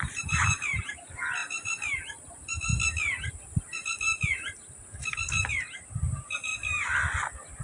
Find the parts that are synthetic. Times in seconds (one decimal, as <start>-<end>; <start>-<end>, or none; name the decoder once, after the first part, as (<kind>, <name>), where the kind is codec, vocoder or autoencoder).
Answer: 0.0-2.7 (vocoder, BigVGAN v2); 3.6-4.1; 5.0-6.5